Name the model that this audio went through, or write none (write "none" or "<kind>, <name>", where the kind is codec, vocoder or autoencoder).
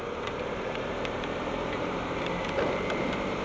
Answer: vocoder, BigVGAN v2